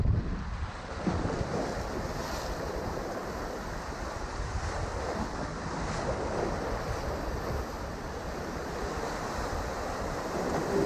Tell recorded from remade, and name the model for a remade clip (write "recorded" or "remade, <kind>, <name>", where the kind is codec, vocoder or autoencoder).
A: recorded